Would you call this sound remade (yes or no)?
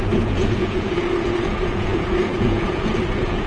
yes